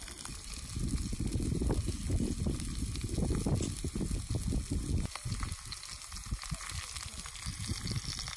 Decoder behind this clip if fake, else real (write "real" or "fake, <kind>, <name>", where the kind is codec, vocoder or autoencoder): real